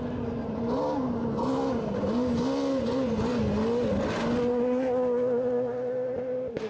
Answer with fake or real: real